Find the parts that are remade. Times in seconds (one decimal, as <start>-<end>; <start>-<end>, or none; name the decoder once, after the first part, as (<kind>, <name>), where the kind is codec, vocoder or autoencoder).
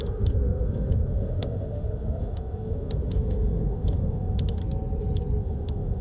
0.0-4.6 (autoencoder, DAC-VAE); 5.4-6.0